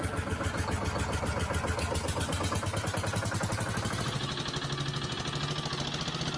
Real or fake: real